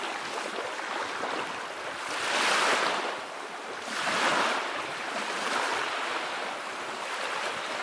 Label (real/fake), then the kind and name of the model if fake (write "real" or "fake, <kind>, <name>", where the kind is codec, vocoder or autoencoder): real